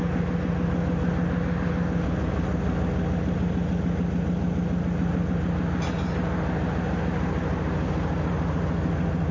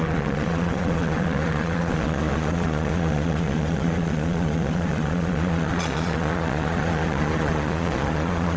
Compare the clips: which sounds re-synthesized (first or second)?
second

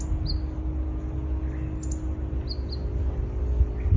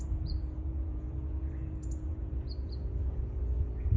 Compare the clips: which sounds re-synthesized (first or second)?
second